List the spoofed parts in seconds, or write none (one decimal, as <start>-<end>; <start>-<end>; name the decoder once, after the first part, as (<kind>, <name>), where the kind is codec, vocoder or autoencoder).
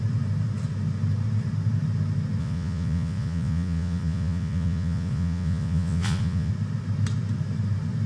2.4-6.5 (vocoder, Vocos)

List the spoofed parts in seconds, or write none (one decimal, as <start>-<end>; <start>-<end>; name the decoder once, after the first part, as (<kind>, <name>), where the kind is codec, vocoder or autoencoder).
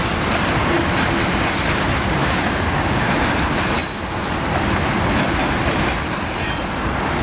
2.2-3.3 (codec, DAC)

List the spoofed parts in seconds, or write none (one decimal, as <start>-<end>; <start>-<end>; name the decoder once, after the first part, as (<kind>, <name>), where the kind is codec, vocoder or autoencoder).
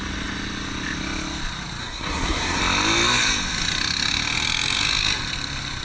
1.8-2.6 (codec, SNAC)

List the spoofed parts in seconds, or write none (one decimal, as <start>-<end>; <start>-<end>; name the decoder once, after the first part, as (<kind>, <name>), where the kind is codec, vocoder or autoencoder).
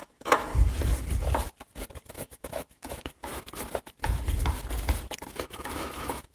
0.0-0.5 (autoencoder, DAC-VAE); 2.1-3.3; 5.3-6.3